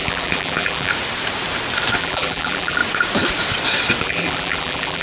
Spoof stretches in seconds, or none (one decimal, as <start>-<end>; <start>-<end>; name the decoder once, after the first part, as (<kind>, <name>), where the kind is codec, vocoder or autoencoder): 0.0-0.9 (vocoder, BigVGAN v2); 2.0-2.8; 4.0-5.0